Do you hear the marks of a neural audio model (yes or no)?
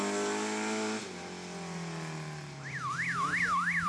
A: no